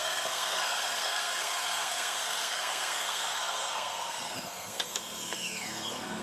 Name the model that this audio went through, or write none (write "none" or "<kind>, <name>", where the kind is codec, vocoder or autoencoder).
codec, SNAC